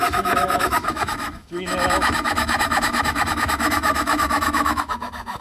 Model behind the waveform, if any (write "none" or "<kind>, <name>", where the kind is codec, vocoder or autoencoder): autoencoder, DAC-VAE